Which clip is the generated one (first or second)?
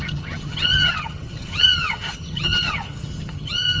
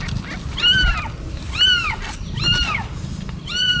first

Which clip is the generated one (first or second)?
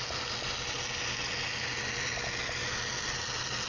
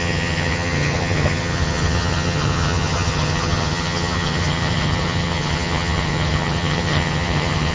second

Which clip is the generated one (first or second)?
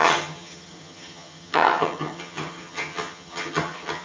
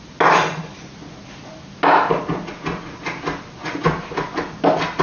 first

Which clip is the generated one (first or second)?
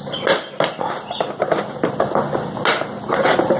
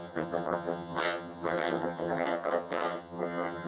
second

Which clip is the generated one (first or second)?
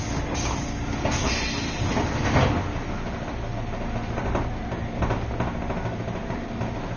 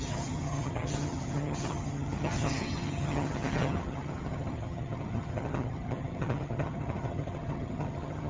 second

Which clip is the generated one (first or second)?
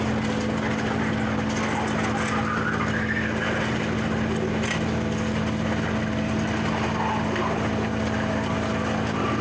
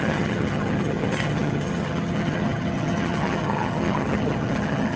second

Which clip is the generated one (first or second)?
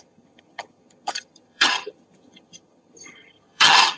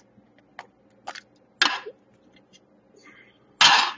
first